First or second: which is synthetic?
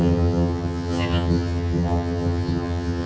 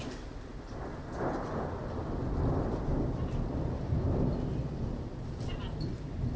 first